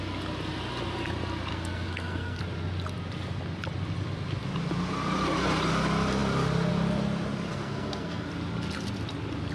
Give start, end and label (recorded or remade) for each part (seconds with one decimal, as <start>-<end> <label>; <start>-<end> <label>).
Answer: 0.0-1.5 recorded; 1.5-2.4 remade; 2.4-7.5 recorded; 7.5-8.3 remade; 8.3-9.5 recorded